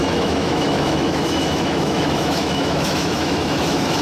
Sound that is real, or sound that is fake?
fake